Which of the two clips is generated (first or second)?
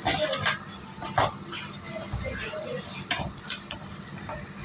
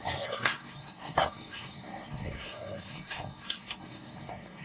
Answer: second